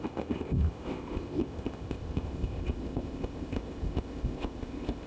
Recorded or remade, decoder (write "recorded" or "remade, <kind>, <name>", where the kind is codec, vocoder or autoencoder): remade, codec, ZipCodec